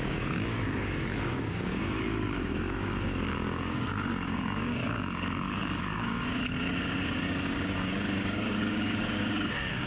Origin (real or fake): fake